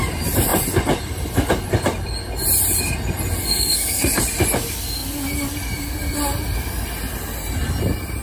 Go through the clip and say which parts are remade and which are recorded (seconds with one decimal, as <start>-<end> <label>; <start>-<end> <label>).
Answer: 0.0-3.4 recorded; 3.4-4.2 remade; 4.2-8.2 recorded